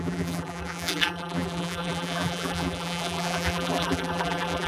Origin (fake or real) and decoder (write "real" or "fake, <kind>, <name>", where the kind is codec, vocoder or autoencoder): fake, vocoder, BigVGAN v2